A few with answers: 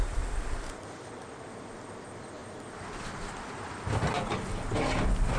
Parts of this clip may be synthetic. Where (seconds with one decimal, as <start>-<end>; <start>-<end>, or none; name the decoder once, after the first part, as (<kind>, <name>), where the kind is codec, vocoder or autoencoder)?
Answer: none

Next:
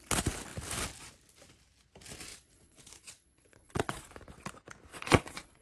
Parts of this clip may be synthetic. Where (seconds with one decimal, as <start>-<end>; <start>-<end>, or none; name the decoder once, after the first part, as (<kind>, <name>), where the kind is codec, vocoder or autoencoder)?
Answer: 2.3-4.0 (vocoder, Vocos); 4.9-5.6

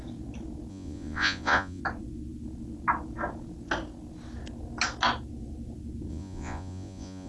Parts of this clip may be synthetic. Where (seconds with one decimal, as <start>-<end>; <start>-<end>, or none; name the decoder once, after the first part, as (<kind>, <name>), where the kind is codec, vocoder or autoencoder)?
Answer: 0.7-1.8 (vocoder, Vocos); 6.1-7.3

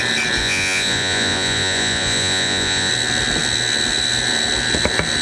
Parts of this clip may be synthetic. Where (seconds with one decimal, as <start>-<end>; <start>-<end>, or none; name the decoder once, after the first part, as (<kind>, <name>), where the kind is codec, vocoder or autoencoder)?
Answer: 0.4-2.9 (vocoder, Vocos)

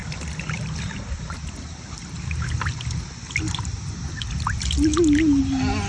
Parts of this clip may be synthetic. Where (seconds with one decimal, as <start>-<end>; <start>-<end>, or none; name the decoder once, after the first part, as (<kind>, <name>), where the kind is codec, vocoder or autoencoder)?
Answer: none